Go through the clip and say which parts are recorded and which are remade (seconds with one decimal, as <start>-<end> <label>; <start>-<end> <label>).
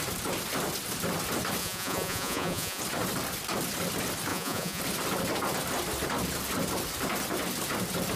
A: 0.0-1.6 recorded; 1.6-2.8 remade; 2.8-4.3 recorded; 4.3-4.8 remade; 4.8-8.2 recorded